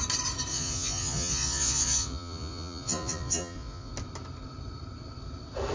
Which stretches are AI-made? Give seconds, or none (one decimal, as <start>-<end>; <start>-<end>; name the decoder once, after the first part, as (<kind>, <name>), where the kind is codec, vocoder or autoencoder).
0.5-3.9 (vocoder, Vocos)